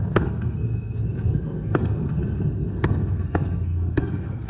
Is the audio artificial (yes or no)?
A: yes